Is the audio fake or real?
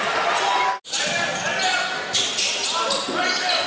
real